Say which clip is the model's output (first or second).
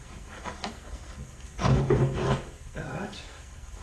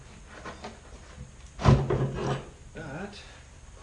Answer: first